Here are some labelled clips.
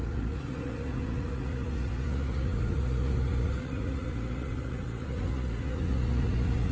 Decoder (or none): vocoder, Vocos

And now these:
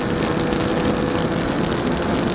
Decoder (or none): none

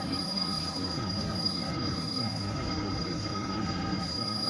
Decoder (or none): codec, SNAC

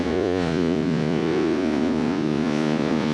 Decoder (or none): vocoder, Vocos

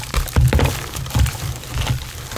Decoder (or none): none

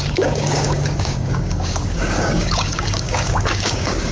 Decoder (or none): codec, DAC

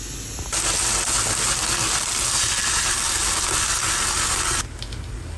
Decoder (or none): none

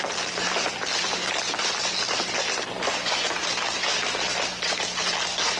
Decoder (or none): none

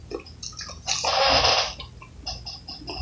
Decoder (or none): none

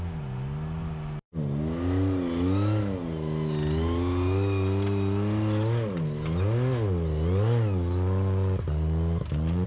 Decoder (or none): none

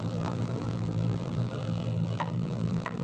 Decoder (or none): vocoder, BigVGAN v2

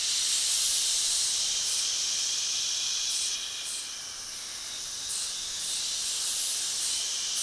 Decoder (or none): none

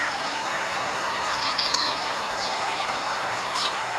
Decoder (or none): codec, SNAC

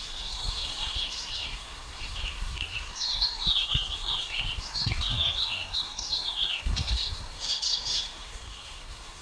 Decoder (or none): codec, SNAC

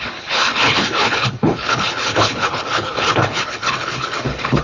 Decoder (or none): codec, HILCodec